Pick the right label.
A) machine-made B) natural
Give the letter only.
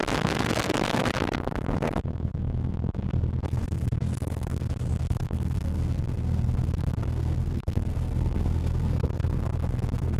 A